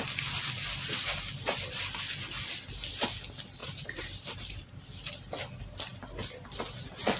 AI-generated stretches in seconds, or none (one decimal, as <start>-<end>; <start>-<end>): 3.6-5.1